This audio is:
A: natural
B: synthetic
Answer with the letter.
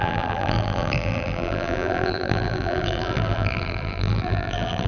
B